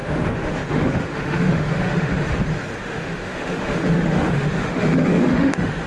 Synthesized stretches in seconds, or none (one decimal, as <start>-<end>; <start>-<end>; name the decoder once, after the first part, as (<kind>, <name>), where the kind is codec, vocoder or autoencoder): 0.0-2.1 (autoencoder, DAC-VAE); 2.8-5.9